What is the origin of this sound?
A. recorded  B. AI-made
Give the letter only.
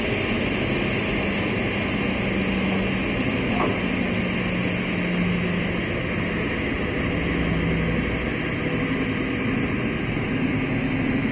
A